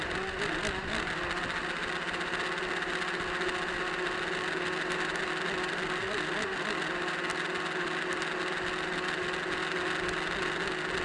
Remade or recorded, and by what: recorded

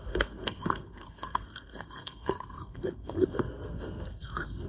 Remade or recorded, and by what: remade, codec, SNAC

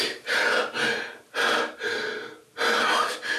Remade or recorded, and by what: recorded